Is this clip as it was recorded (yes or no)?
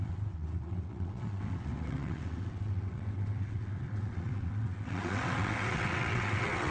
no